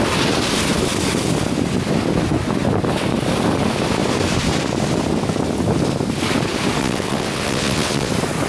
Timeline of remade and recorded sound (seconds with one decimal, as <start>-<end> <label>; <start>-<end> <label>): 0.0-6.8 recorded; 6.8-8.1 remade; 8.1-8.5 recorded